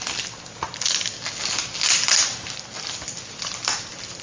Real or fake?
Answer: real